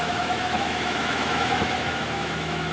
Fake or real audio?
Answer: fake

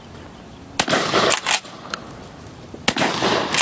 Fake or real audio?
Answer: real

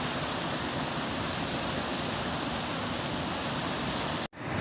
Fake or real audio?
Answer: real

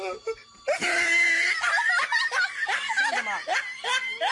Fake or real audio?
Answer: real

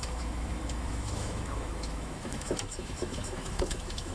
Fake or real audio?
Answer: fake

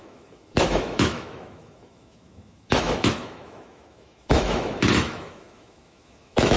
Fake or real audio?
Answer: fake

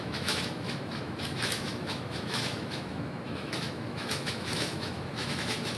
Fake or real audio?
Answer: fake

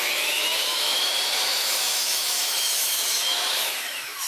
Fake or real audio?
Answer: fake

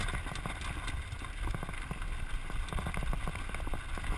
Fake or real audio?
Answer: real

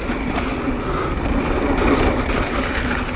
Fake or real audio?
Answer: real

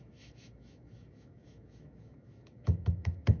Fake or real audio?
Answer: fake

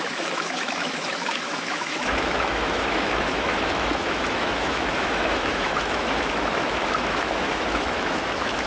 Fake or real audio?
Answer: fake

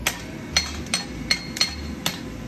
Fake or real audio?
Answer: real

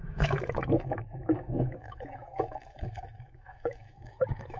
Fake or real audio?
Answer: fake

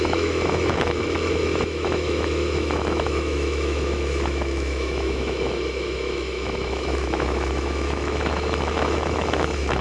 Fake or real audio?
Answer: fake